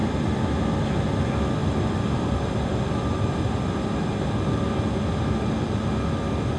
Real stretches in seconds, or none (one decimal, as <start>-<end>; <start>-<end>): 0.6-1.6; 4.9-6.6